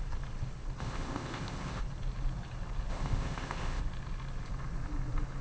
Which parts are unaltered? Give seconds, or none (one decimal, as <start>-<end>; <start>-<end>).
0.0-0.8; 1.8-2.9; 3.8-5.4